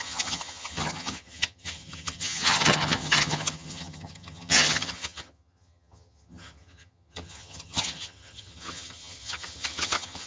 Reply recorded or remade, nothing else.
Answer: remade